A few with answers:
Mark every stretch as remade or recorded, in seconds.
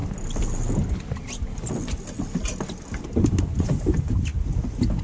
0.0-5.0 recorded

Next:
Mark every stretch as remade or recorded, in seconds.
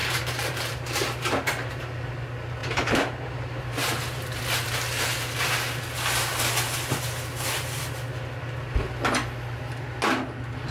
0.0-1.7 remade; 1.7-2.6 recorded; 2.6-4.4 remade; 4.4-10.7 recorded